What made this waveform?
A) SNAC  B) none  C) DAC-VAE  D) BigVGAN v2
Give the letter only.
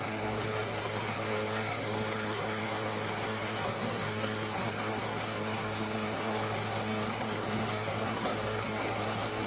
A